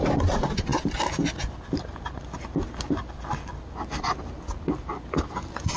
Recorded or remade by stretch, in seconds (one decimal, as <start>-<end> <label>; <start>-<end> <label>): 0.0-5.8 recorded